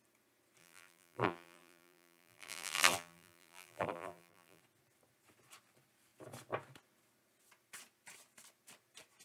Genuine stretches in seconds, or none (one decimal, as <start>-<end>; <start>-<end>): 0.0-0.6; 4.6-9.2

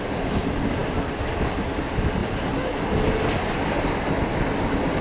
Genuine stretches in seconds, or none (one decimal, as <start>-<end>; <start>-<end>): 0.0-5.0

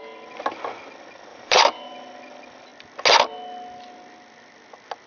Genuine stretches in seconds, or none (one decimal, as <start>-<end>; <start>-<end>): 0.0-1.3; 1.9-5.1

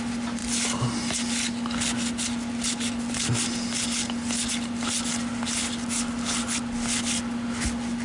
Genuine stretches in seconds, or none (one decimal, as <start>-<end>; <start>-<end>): 0.0-8.0

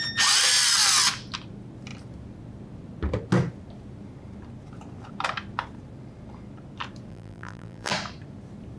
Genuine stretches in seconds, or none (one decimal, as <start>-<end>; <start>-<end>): 0.0-7.1; 7.9-8.8